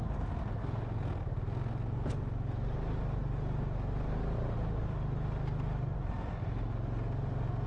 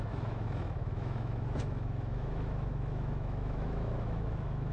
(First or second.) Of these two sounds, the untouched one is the first